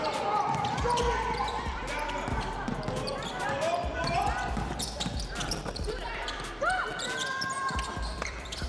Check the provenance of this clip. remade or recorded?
remade